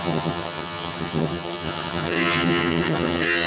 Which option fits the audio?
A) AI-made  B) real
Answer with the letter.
A